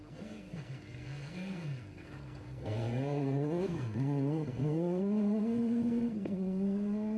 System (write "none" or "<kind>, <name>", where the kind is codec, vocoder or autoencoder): codec, SNAC